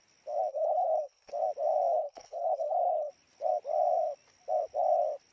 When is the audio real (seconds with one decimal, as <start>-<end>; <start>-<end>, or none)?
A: 0.0-0.5; 1.3-1.9; 3.1-5.3